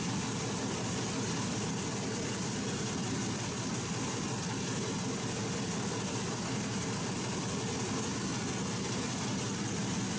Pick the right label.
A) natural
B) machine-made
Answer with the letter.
A